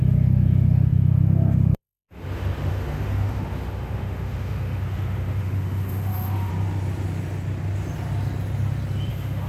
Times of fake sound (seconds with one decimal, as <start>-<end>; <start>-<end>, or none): 0.0-6.5; 9.1-9.5